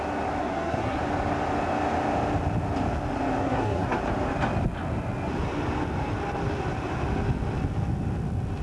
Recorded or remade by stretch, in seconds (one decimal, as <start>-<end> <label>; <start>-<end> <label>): 0.0-0.4 recorded; 0.4-1.0 remade; 1.0-3.4 recorded; 3.4-4.0 remade; 4.0-8.6 recorded